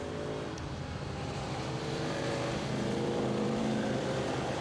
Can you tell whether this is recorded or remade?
remade